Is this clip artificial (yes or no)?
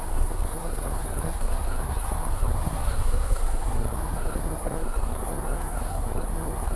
yes